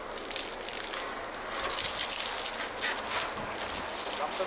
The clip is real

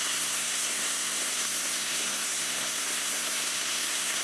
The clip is fake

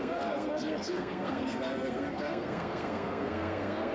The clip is fake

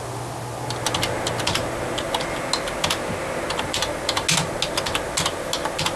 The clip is real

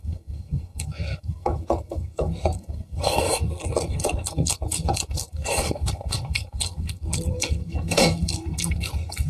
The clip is fake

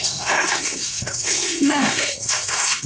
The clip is fake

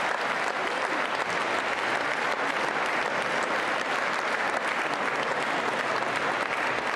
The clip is real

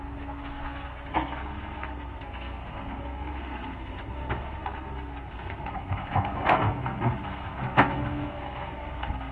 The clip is fake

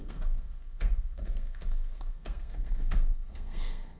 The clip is fake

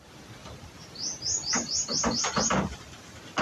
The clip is real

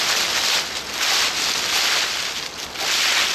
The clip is real